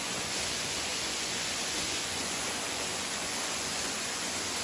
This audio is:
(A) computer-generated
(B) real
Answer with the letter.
A